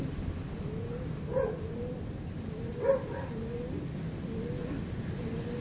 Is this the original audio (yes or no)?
yes